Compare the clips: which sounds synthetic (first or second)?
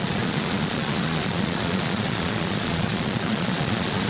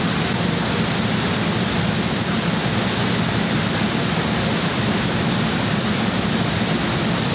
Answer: first